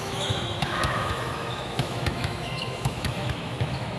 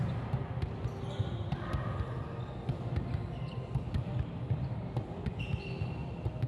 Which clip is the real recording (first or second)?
second